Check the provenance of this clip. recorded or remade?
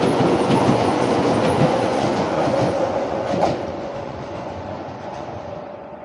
remade